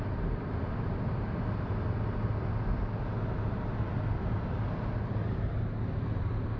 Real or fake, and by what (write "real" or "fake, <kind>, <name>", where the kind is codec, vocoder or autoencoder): real